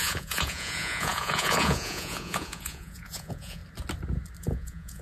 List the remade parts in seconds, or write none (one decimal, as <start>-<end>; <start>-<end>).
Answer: 0.0-3.6; 4.4-5.0